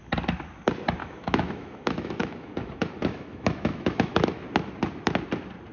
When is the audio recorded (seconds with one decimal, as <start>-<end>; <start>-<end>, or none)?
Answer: 0.0-1.0; 4.4-5.7